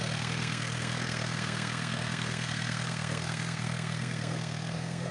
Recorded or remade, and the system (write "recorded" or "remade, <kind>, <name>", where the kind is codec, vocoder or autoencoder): remade, codec, SNAC